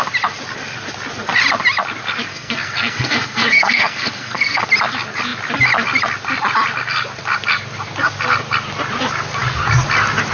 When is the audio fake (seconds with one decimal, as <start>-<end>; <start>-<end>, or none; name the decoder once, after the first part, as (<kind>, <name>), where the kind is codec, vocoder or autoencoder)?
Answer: 2.3-4.6 (codec, SNAC)